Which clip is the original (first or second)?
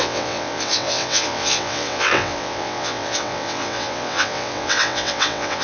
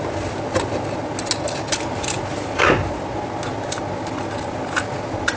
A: second